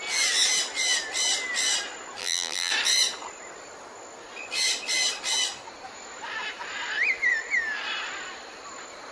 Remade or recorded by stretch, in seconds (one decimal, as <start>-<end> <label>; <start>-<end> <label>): 0.0-2.2 recorded; 2.2-2.7 remade; 2.7-9.1 recorded